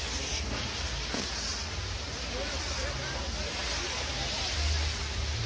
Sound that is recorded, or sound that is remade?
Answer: recorded